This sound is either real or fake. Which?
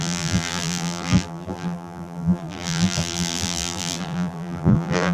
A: fake